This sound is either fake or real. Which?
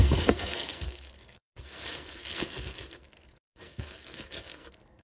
fake